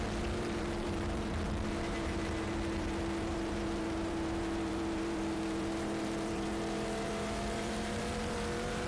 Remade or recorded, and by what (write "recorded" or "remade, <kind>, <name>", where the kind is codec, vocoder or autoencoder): remade, vocoder, BigVGAN v2